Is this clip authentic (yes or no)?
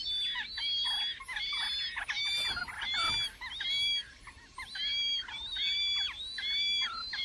yes